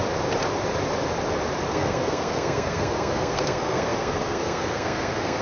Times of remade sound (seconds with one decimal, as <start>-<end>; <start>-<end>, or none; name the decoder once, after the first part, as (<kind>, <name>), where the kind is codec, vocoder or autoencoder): 1.7-5.4 (codec, SNAC)